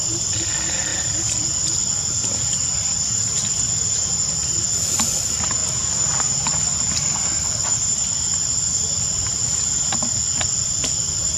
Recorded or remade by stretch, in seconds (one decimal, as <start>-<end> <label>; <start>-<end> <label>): 0.0-11.4 recorded